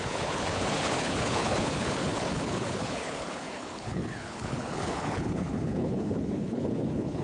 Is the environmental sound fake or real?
fake